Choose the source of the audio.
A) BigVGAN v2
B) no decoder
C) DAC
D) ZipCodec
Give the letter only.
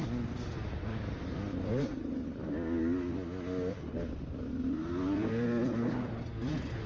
A